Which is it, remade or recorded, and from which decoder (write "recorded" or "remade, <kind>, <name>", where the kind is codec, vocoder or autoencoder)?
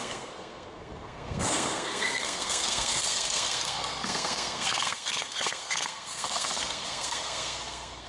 remade, codec, SNAC